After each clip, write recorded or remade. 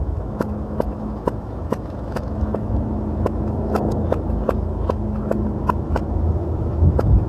remade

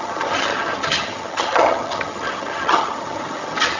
remade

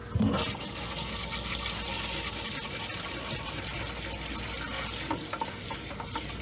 recorded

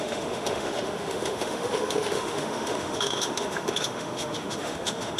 remade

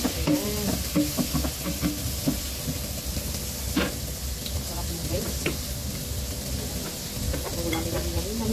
recorded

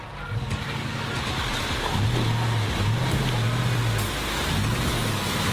recorded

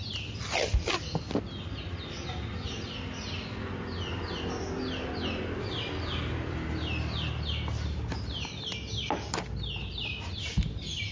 recorded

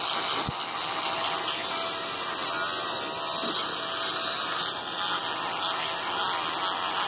recorded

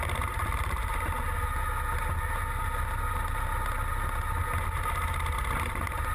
recorded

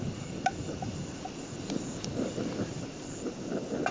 recorded